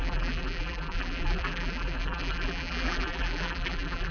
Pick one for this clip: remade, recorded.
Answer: remade